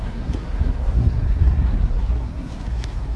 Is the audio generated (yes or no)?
yes